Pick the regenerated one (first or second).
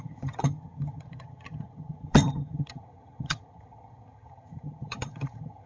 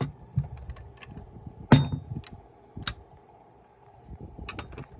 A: first